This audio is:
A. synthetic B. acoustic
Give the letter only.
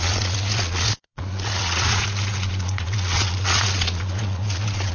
A